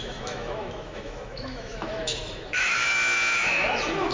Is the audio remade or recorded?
remade